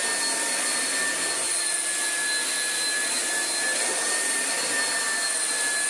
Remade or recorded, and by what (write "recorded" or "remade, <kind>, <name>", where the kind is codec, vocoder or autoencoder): recorded